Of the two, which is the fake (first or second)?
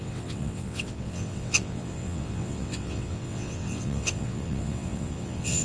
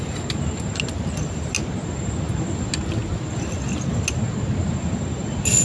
first